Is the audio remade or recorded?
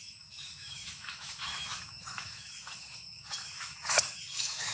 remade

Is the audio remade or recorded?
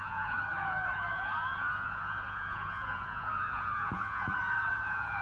remade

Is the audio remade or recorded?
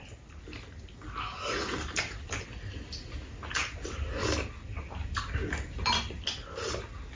recorded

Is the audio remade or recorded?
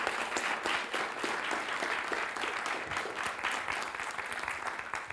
recorded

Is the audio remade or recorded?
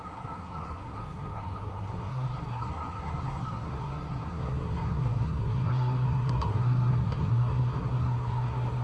remade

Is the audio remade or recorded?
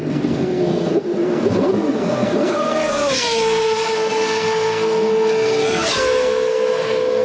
remade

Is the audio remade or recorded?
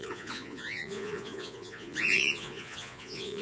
remade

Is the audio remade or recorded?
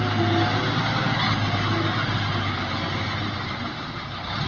recorded